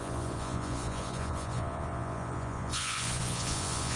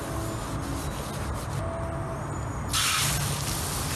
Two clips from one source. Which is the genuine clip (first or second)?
second